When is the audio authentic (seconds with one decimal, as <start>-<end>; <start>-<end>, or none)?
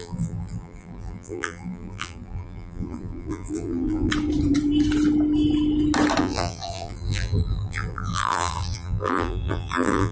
4.1-6.2